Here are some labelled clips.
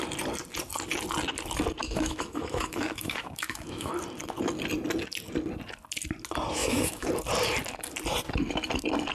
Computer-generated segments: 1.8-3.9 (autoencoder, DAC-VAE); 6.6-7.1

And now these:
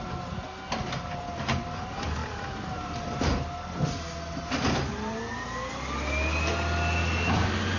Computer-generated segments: none

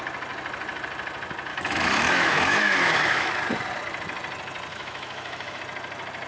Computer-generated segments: 1.5-3.3 (autoencoder, DAC-VAE); 4.7-5.6